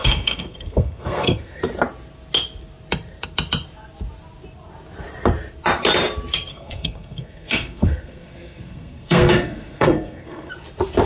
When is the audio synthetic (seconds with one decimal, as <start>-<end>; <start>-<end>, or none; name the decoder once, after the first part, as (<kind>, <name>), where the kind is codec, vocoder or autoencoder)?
0.0-1.6 (codec, SNAC); 6.5-10.5